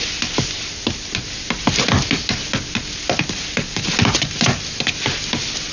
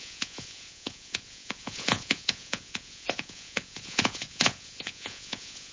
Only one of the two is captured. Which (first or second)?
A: first